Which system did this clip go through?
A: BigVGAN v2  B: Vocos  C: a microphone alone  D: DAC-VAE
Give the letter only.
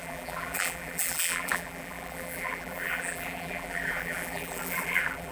A